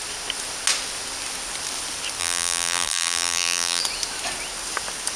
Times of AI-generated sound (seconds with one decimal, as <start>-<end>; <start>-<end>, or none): 2.2-3.8